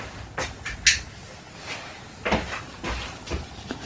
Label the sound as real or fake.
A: real